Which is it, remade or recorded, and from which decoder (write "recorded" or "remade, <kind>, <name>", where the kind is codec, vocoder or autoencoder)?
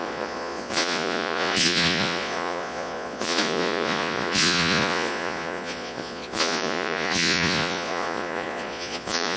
remade, vocoder, Vocos